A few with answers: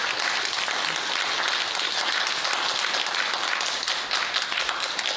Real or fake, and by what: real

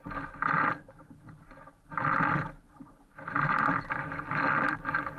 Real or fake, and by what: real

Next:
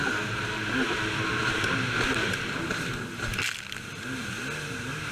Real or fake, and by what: real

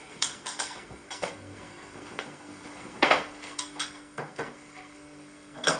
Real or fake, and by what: fake, codec, SNAC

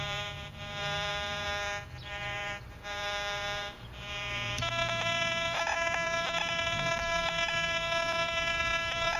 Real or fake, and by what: fake, vocoder, BigVGAN v2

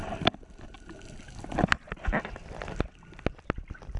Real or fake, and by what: real